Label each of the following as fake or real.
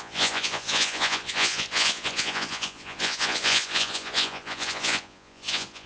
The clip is fake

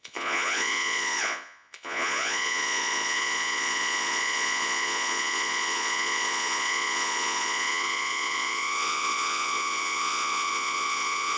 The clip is fake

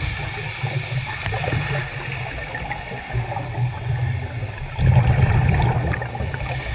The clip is real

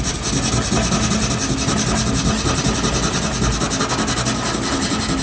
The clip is real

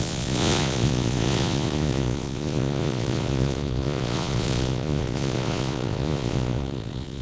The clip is fake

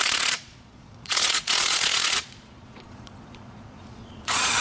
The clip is fake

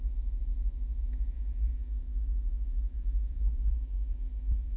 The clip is fake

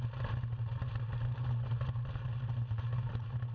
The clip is real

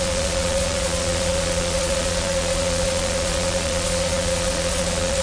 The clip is fake